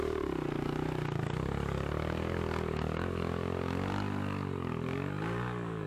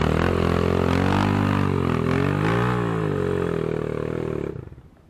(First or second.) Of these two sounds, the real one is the second